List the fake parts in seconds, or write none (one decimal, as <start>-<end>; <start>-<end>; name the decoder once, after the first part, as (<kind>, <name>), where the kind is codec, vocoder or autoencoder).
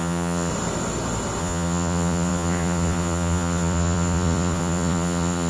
0.0-0.5 (vocoder, Vocos); 1.4-5.5